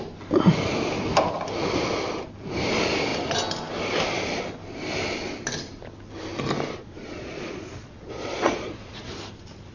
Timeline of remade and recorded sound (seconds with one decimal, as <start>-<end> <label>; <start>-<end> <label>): 0.0-6.8 recorded; 6.8-9.1 remade; 9.1-9.7 recorded